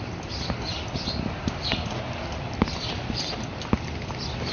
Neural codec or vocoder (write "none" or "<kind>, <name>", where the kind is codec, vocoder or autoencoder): none